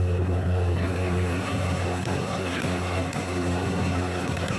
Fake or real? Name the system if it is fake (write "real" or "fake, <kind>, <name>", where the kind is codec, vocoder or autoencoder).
fake, codec, SNAC